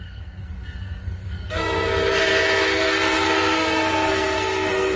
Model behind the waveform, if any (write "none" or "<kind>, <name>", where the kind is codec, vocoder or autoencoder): codec, SNAC